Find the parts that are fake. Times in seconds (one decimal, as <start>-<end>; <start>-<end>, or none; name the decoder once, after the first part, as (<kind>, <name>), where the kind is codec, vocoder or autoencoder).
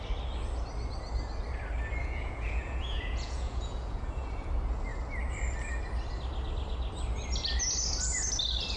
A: 2.0-4.5 (vocoder, Vocos)